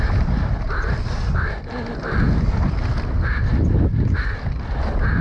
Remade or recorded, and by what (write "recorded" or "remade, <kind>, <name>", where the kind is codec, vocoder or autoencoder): recorded